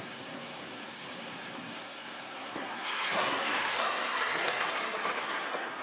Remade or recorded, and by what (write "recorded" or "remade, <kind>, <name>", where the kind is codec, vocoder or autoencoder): remade, codec, SNAC